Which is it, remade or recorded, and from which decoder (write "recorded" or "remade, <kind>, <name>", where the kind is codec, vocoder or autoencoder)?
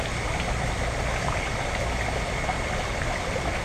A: recorded